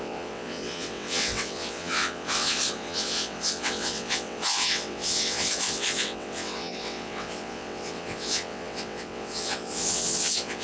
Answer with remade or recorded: remade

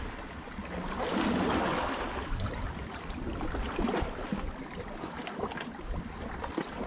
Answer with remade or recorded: recorded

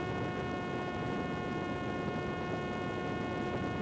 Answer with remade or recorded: recorded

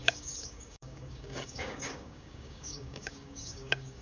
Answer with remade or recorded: remade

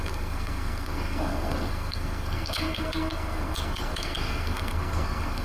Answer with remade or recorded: remade